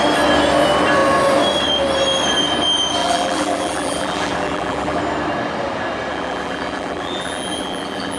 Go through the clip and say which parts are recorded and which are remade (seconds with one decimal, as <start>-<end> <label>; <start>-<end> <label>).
0.0-3.0 recorded; 3.0-5.0 remade; 5.0-6.1 recorded; 6.1-8.2 remade